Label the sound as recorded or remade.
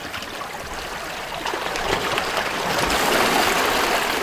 recorded